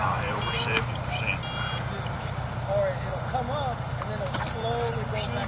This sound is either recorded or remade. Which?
recorded